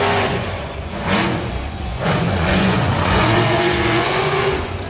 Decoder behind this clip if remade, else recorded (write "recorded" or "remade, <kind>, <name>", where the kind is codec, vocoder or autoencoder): remade, vocoder, Vocos